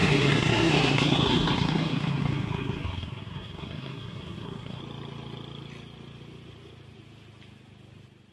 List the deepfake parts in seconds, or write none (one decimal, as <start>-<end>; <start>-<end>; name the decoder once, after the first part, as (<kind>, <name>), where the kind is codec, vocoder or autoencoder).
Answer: 0.0-4.8 (codec, SNAC)